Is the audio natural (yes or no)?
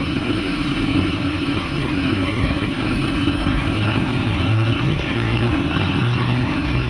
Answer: no